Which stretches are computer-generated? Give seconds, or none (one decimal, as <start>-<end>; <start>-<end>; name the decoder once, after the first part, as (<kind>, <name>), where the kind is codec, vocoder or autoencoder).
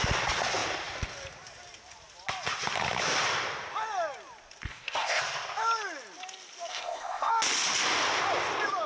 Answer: 4.7-5.2 (codec, ZipCodec); 6.7-7.3